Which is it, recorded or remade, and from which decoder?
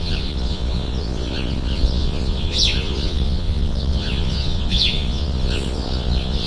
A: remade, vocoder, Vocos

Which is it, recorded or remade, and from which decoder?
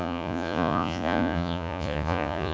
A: remade, vocoder, Vocos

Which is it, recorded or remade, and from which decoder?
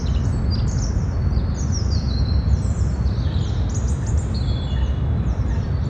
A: recorded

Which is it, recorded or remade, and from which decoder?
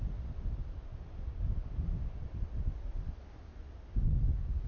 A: recorded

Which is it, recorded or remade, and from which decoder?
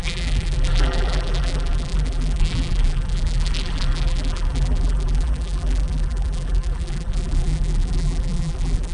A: remade, vocoder, BigVGAN v2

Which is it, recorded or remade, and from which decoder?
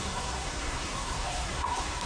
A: remade, codec, SNAC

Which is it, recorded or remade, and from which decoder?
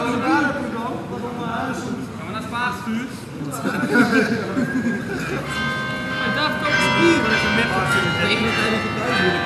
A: recorded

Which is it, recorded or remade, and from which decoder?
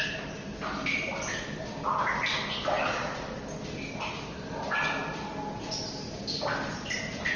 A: recorded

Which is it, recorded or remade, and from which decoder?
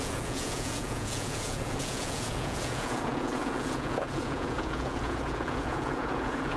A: remade, vocoder, Vocos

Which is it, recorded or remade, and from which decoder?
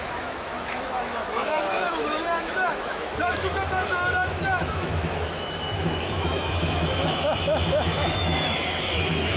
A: remade, autoencoder, DAC-VAE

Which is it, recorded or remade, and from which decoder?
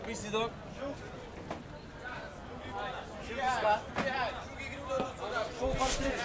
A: recorded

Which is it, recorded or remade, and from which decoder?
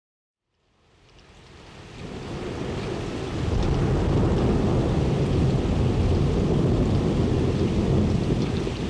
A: recorded